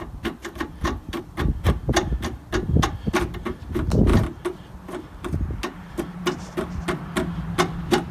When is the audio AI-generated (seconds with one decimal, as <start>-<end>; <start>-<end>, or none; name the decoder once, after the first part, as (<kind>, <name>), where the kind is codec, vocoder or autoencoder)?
0.4-1.2 (vocoder, BigVGAN v2)